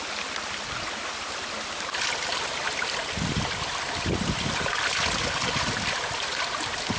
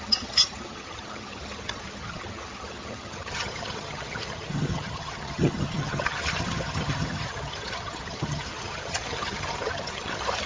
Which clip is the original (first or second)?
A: first